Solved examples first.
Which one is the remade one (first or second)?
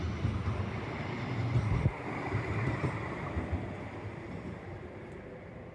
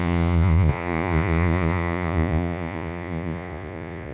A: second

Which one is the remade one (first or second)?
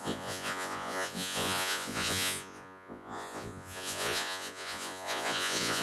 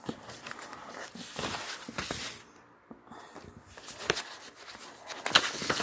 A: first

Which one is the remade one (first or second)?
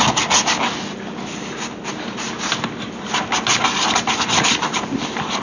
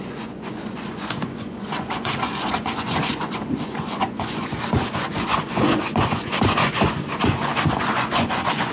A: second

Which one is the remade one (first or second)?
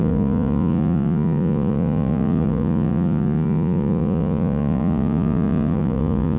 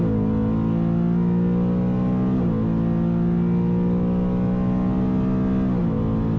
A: first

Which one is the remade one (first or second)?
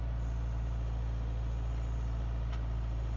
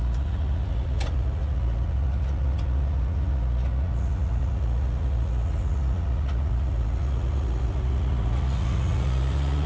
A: second